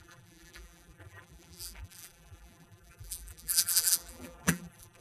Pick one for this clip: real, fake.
fake